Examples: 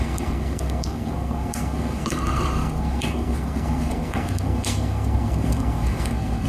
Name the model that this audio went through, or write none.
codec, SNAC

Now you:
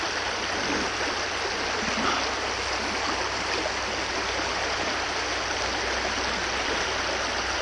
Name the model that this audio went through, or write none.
none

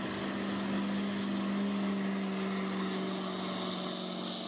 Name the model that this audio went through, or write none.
none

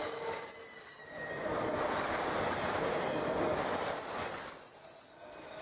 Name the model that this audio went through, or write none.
none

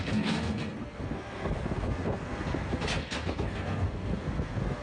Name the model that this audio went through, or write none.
codec, SNAC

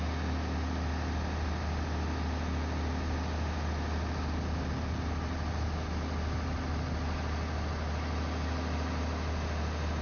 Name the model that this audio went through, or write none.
none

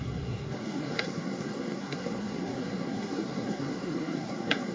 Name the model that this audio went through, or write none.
codec, SNAC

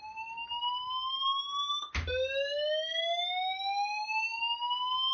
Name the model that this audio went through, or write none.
none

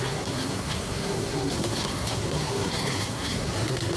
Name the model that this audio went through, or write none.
codec, SNAC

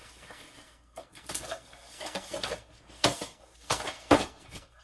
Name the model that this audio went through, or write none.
codec, SNAC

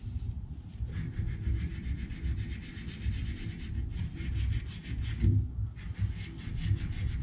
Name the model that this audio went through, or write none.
none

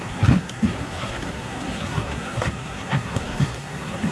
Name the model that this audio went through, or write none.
codec, SNAC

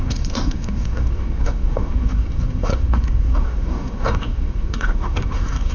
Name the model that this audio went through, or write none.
codec, SNAC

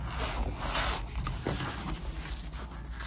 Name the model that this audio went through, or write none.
none